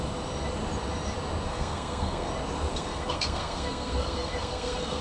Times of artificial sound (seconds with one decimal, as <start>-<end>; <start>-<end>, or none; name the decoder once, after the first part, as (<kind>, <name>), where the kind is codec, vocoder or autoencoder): 1.5-2.3 (codec, SNAC); 2.7-5.0